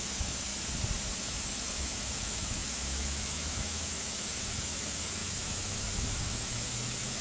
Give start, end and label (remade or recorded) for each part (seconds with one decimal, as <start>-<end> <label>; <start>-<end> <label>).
0.0-0.5 remade; 0.5-1.2 recorded; 1.2-7.2 remade